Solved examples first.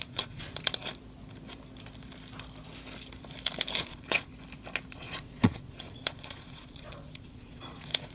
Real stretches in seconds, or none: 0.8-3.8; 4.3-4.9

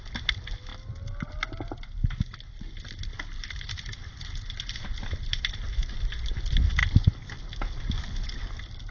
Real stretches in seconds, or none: 0.0-8.9

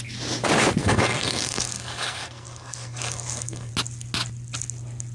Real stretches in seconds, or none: 0.0-0.8; 3.7-5.1

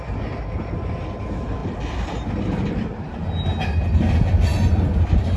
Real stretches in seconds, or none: 0.0-5.4

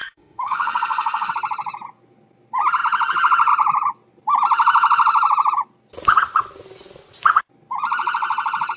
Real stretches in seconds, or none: 1.3-8.8

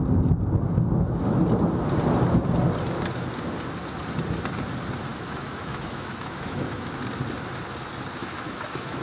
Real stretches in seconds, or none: 0.0-5.1; 7.0-8.2

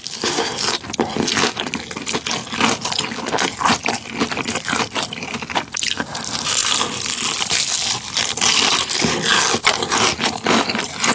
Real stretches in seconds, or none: 0.0-6.6; 7.1-11.1